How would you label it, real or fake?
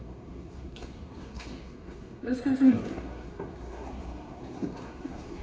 fake